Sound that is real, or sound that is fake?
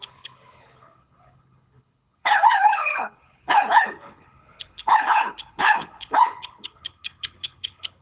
fake